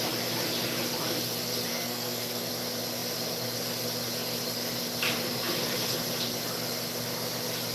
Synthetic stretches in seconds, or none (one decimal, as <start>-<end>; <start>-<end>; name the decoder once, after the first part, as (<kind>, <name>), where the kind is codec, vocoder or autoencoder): 1.7-2.5 (codec, SNAC)